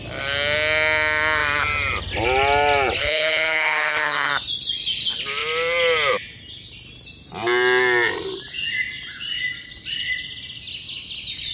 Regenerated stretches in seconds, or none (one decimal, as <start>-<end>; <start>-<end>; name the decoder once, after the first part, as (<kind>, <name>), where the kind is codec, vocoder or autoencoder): 3.0-4.3 (codec, HILCodec)